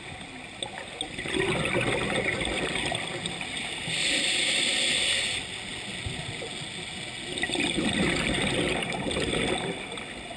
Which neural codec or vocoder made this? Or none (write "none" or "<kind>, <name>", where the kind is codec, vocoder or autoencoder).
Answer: none